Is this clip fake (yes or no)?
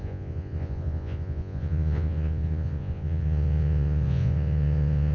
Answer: yes